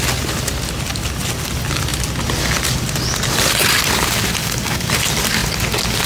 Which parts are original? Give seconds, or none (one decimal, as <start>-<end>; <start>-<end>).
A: 0.0-4.4; 4.9-6.1